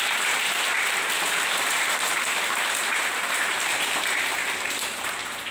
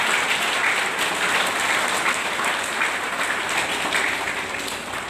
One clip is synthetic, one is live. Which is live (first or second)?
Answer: second